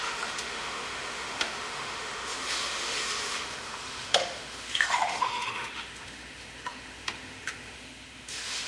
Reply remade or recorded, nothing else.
remade